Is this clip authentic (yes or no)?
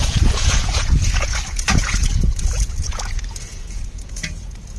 no